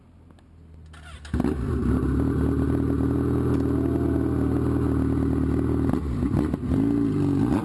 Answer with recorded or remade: recorded